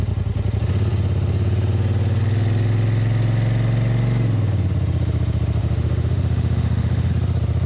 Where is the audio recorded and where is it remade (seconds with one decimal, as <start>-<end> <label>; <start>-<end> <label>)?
0.0-5.6 recorded; 5.6-7.1 remade; 7.1-7.7 recorded